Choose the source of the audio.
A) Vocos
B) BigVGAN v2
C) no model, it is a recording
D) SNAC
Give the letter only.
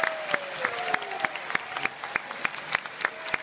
C